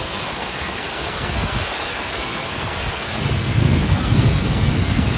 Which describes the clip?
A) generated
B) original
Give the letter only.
A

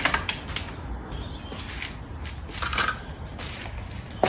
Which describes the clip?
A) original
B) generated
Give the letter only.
A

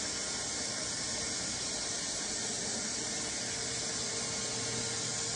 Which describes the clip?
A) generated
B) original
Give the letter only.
B